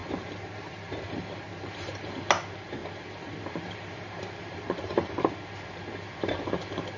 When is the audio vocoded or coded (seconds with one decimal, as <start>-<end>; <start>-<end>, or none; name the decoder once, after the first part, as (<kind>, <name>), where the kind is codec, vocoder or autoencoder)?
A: 0.0-2.1 (vocoder, BigVGAN v2); 2.8-5.3